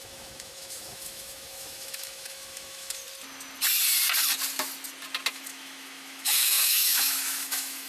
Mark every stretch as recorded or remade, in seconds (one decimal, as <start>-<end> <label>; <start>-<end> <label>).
0.0-3.0 remade; 3.0-5.3 recorded; 5.3-7.9 remade